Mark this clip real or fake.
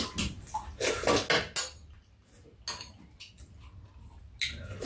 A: real